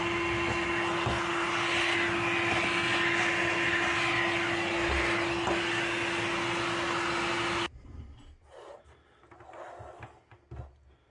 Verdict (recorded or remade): recorded